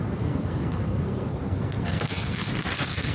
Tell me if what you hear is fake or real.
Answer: fake